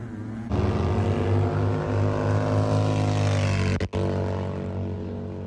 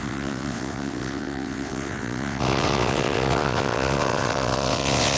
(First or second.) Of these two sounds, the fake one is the second